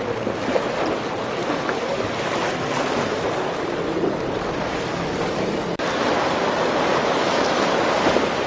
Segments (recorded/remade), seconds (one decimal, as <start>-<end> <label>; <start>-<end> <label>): 0.0-8.5 recorded